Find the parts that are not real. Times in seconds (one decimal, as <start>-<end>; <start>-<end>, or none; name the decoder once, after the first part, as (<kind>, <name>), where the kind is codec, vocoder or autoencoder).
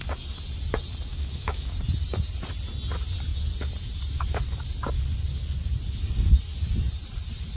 1.1-1.7 (autoencoder, DAC-VAE)